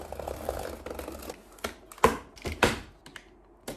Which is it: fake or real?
real